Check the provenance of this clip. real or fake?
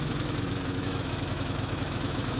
fake